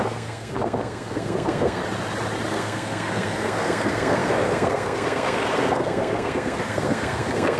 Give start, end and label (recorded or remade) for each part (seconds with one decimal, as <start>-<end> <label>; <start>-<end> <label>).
0.0-1.8 remade; 1.8-2.5 recorded; 2.5-7.6 remade